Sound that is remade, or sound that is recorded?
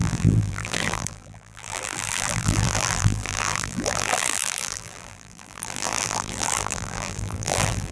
remade